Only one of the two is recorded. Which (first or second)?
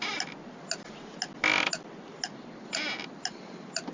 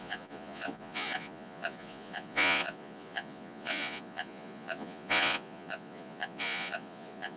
first